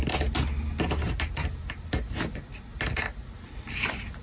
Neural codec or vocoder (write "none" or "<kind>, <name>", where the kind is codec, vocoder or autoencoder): none